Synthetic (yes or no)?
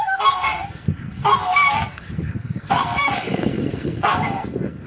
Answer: yes